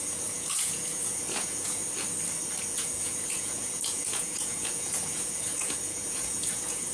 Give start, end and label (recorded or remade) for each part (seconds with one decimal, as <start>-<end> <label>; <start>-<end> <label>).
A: 0.0-1.8 remade; 1.8-2.6 recorded; 2.6-6.9 remade